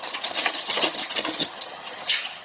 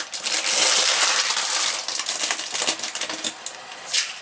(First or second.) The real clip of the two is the second